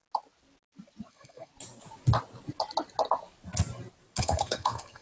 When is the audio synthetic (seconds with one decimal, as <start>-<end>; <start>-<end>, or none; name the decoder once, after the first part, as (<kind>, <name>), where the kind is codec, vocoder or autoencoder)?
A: 1.1-1.5 (codec, SNAC); 4.2-5.0